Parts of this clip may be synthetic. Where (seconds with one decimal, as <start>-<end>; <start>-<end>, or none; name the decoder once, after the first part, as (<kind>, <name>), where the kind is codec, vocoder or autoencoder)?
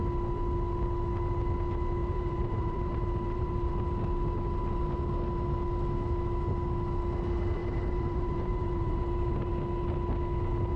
2.0-3.7 (vocoder, BigVGAN v2); 7.6-9.5